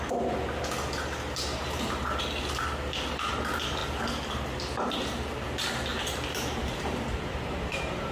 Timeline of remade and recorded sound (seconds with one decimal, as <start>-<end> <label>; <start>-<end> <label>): 0.0-1.5 recorded; 1.5-2.2 remade; 2.2-5.9 recorded; 5.9-8.1 remade